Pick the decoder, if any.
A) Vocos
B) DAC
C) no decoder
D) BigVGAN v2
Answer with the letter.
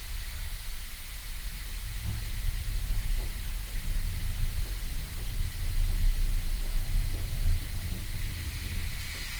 C